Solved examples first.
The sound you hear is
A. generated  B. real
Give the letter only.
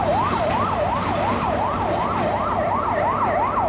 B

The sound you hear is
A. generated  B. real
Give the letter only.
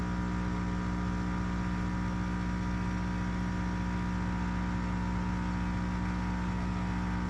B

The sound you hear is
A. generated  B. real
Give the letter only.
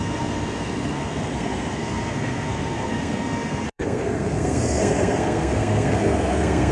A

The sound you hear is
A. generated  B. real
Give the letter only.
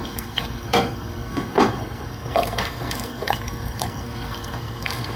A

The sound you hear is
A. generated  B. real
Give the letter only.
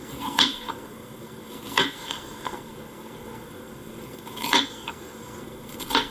A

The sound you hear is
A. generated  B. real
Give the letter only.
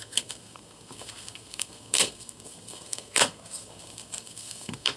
A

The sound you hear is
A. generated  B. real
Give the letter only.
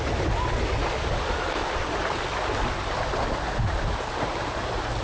B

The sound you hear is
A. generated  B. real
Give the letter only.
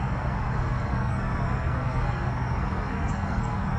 A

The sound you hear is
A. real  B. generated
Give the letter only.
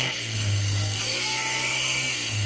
B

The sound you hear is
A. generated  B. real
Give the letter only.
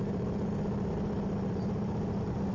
B